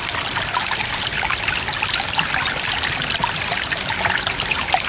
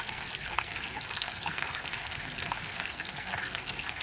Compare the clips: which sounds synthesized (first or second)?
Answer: second